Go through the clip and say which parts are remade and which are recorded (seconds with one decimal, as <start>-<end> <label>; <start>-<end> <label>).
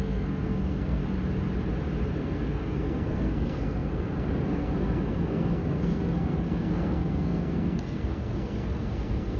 0.0-1.0 remade; 1.0-2.2 recorded; 2.2-9.4 remade